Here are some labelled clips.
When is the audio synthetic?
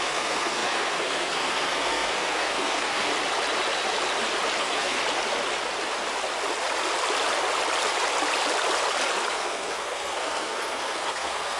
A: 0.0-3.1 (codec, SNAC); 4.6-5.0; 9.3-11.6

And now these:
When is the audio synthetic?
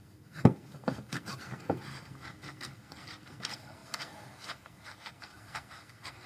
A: 0.0-6.3 (codec, SNAC)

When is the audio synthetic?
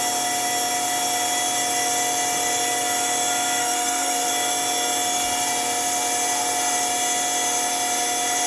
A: 3.6-4.3 (codec, SNAC)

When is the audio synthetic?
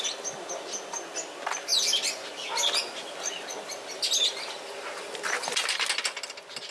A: none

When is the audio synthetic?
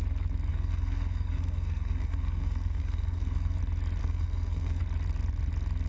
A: 0.5-3.6 (codec, SNAC); 4.0-4.8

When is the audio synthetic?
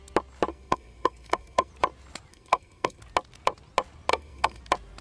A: 0.5-1.7 (codec, SNAC); 2.3-3.0; 4.1-4.6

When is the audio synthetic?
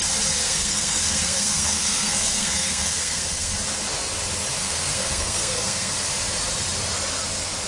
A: 0.4-3.5 (codec, SNAC); 4.6-5.9